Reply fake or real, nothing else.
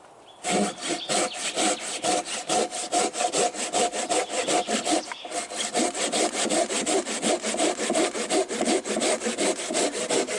real